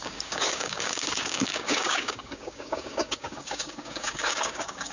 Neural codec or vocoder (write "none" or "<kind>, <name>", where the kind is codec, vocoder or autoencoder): codec, DAC